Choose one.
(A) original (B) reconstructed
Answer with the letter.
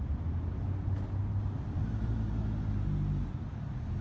A